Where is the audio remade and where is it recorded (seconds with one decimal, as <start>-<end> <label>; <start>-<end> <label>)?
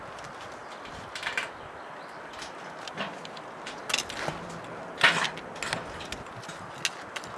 0.0-7.4 recorded